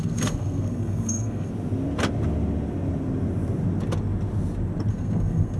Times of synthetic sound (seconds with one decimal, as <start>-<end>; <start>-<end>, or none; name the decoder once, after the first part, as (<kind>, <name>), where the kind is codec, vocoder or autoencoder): 0.0-1.5 (codec, SNAC); 4.9-5.6